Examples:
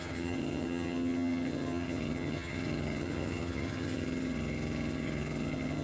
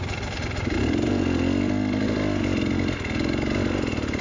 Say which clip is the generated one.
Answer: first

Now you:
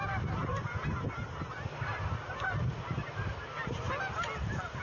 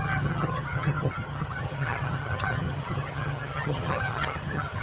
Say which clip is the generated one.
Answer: second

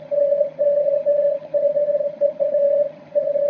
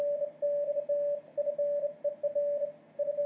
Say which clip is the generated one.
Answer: first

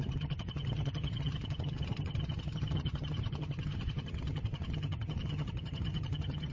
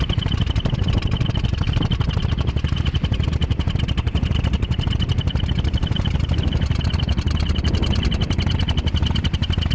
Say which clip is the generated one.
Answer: first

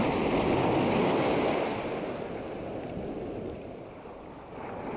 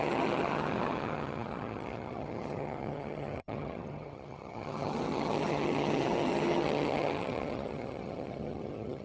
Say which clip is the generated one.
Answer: second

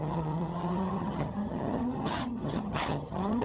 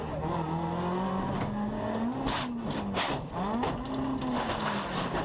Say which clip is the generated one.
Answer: first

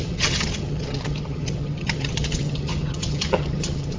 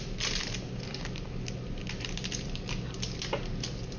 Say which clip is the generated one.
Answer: first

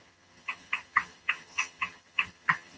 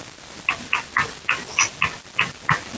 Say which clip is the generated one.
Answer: first